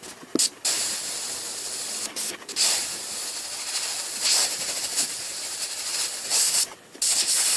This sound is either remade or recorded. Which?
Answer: recorded